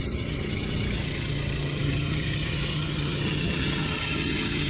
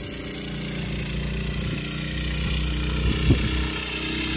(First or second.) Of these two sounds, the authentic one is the second